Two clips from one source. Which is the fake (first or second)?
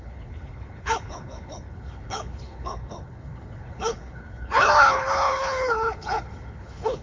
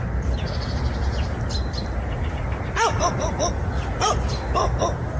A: first